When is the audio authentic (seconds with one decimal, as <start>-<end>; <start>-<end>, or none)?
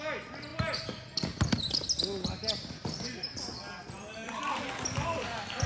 0.0-5.7